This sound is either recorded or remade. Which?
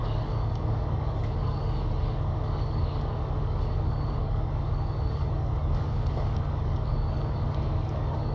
remade